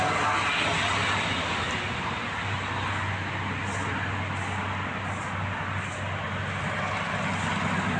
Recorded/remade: recorded